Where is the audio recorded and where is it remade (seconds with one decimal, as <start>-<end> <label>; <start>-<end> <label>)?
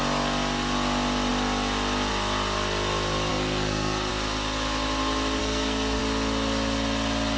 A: 0.0-3.3 recorded; 3.3-4.1 remade; 4.1-5.4 recorded; 5.4-6.0 remade; 6.0-7.4 recorded